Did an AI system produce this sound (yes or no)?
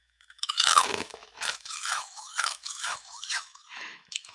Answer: yes